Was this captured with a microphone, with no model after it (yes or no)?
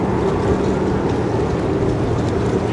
yes